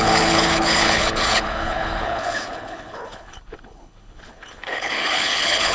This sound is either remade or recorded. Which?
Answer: remade